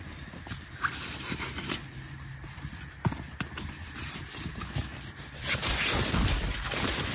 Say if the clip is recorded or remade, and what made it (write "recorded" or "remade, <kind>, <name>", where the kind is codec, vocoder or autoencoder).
remade, vocoder, BigVGAN v2